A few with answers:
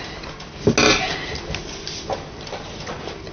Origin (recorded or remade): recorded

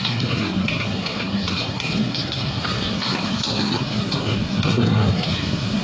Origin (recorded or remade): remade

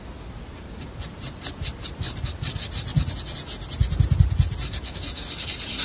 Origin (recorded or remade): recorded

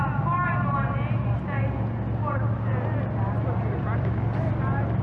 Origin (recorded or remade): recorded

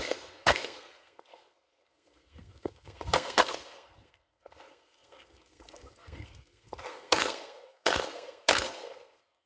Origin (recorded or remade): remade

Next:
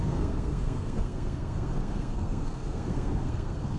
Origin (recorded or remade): remade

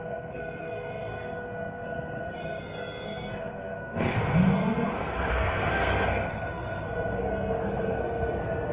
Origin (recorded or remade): remade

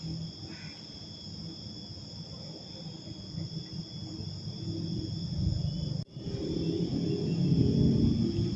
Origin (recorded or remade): recorded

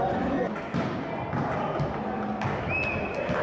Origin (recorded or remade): recorded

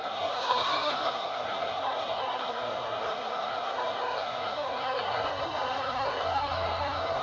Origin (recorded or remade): remade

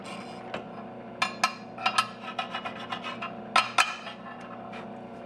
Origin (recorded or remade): recorded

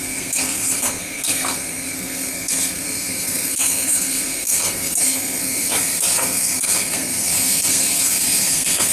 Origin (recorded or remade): remade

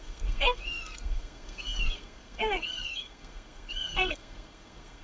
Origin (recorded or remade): remade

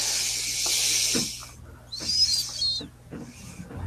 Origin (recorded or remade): recorded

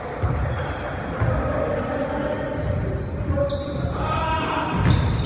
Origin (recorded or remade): recorded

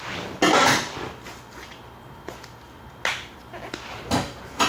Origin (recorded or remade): recorded